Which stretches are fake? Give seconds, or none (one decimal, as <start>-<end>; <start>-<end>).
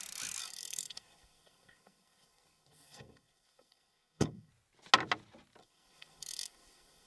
0.4-4.5; 5.6-7.1